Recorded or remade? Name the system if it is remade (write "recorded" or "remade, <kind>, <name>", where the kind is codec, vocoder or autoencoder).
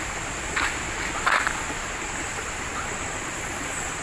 recorded